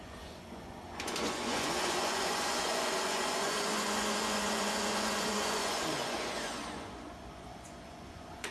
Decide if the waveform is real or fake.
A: fake